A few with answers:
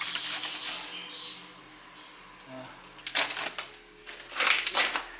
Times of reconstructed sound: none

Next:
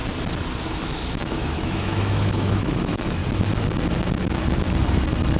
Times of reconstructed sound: 0.6-3.2 (autoencoder, DAC-VAE)

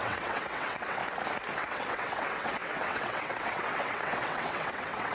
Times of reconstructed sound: 0.0-1.0 (vocoder, WaveNeXt); 1.6-5.1

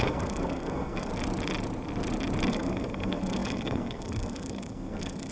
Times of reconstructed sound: 0.0-1.1 (codec, SNAC); 2.5-5.3

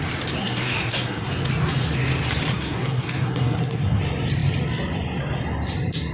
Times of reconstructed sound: 0.4-1.3 (codec, SNAC); 2.5-4.0

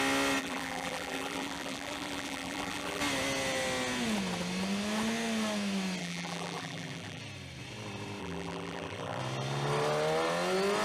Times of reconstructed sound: 0.4-3.0 (vocoder, BigVGAN v2); 6.0-7.2; 8.2-9.2

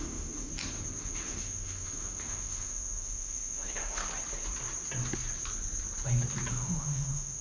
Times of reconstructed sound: 0.0-0.5 (autoencoder, DAC-VAE); 1.0-4.0; 6.5-7.4